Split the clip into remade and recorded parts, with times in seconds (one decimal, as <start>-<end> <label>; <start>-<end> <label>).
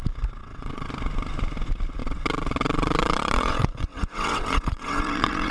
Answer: 0.0-0.4 recorded; 0.4-0.9 remade; 0.9-2.0 recorded; 2.0-5.5 remade